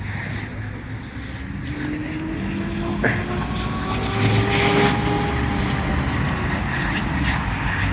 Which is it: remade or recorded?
recorded